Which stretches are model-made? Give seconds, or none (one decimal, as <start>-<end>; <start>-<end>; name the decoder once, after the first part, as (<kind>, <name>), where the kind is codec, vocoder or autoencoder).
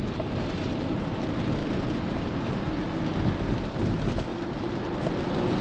1.6-2.6 (vocoder, BigVGAN v2)